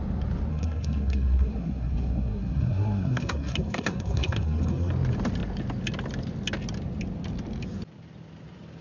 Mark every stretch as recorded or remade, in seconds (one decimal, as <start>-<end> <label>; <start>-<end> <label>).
0.0-0.5 recorded; 0.5-4.9 remade; 4.9-8.8 recorded